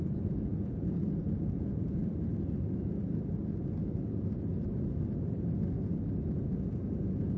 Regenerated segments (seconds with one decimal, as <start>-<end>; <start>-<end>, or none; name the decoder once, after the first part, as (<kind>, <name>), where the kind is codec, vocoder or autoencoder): 0.0-2.0 (vocoder, Vocos); 6.3-7.4